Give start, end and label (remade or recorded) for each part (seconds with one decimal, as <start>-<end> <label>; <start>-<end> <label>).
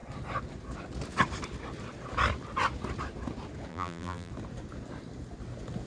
0.0-3.7 recorded; 3.7-4.3 remade; 4.3-5.9 recorded